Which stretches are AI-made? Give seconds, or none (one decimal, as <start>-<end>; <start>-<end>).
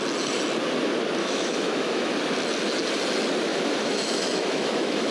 1.2-2.1; 3.5-5.1